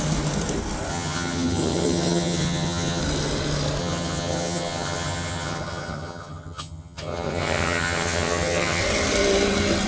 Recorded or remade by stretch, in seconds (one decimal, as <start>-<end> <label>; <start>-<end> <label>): 0.0-0.9 recorded; 0.9-3.0 remade; 3.0-3.8 recorded; 3.8-8.8 remade; 8.8-9.9 recorded